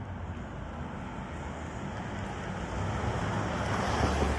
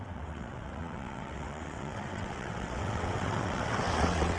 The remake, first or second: second